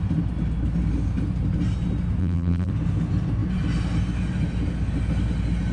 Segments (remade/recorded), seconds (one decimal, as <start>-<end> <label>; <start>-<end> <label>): 0.0-2.2 recorded; 2.2-2.7 remade; 2.7-5.7 recorded